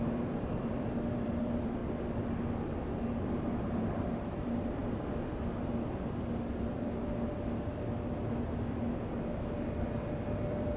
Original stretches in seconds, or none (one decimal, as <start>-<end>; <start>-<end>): 1.8-3.2; 4.8-9.6